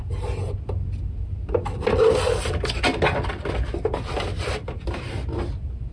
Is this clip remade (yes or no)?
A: no